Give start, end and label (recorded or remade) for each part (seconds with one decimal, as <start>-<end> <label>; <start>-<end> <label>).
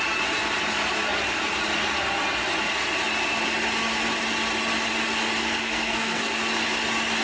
0.0-5.4 recorded; 5.4-6.3 remade; 6.3-7.2 recorded